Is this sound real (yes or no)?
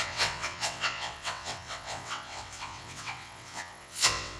no